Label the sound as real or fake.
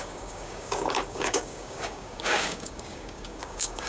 fake